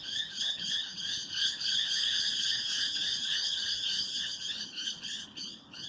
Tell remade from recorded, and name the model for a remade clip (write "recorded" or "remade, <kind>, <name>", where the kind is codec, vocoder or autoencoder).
remade, codec, HILCodec